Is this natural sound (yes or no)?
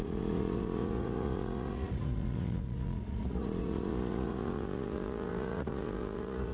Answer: no